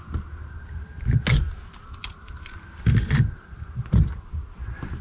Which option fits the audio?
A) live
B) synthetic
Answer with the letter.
A